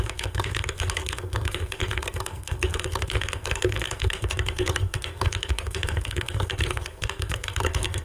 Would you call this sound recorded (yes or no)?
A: no